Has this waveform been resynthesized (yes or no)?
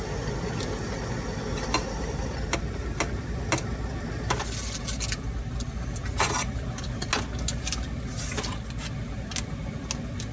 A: no